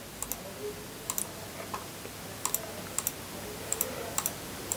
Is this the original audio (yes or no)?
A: yes